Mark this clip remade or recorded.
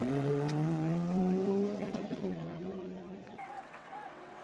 remade